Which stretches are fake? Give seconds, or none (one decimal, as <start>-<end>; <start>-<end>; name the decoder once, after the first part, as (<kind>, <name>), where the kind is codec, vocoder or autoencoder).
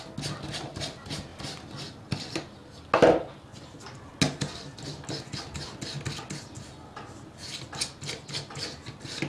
none